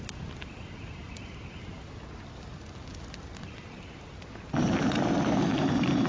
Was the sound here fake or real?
real